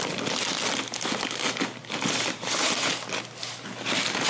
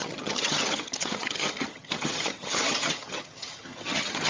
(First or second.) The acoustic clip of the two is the first